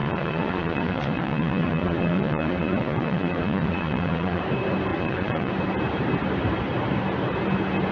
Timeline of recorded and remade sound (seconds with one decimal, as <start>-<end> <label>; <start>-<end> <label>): 0.0-4.4 remade; 4.4-4.9 recorded; 4.9-5.5 remade; 5.5-7.9 recorded